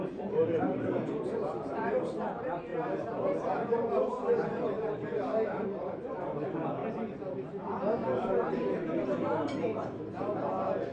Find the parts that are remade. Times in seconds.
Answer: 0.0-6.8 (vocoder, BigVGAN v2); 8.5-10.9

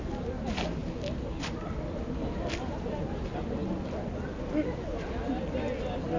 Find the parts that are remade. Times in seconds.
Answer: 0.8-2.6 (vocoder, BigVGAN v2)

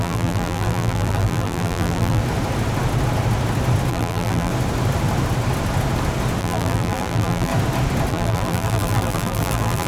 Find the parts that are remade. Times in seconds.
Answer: 0.0-2.2 (vocoder, BigVGAN v2); 3.9-4.5; 6.4-7.5; 8.1-9.9

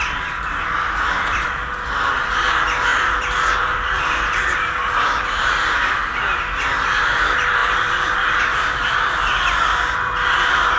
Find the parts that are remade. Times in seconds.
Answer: 0.0-10.8 (vocoder, BigVGAN v2)

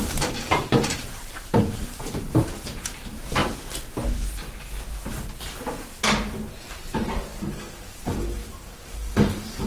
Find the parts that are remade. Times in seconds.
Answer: 0.0-3.4 (vocoder, BigVGAN v2); 6.6-9.7

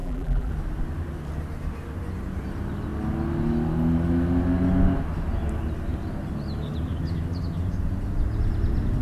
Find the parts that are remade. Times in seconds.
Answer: 0.0-0.5 (vocoder, BigVGAN v2)

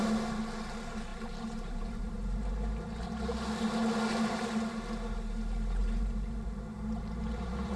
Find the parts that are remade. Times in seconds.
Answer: 1.1-2.5 (vocoder, BigVGAN v2); 5.8-7.8

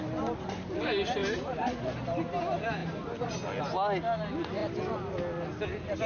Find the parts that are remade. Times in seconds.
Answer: 1.2-2.0 (vocoder, BigVGAN v2)